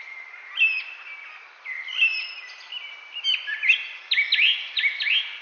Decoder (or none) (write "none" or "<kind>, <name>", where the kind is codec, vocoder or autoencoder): none